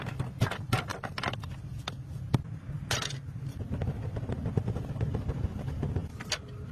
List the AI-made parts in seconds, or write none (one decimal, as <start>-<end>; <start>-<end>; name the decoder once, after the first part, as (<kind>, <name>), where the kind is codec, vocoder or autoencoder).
none